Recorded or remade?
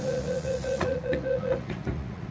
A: remade